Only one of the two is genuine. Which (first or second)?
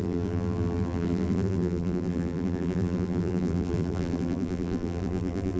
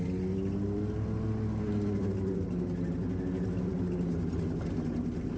second